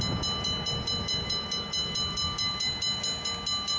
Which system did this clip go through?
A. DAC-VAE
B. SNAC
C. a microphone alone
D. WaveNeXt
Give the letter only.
C